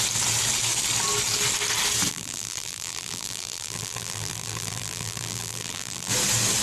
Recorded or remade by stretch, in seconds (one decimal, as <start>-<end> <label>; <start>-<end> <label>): 0.0-2.1 recorded; 2.1-6.1 remade; 6.1-6.6 recorded